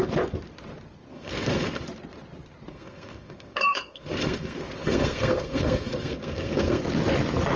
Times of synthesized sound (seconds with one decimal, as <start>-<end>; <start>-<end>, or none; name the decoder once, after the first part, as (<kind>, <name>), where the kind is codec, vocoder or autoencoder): 1.1-1.8 (codec, SNAC); 2.7-6.8